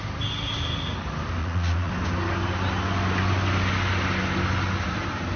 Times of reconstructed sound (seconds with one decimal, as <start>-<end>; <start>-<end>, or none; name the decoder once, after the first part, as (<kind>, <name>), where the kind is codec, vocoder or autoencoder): 1.4-1.9 (vocoder, Vocos)